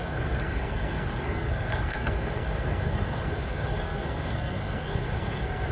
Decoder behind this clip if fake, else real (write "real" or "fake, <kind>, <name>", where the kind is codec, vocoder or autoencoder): fake, codec, SNAC